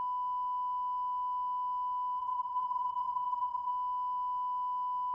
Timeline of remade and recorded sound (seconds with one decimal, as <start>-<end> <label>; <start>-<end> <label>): 0.0-2.2 recorded; 2.2-3.7 remade; 3.7-5.1 recorded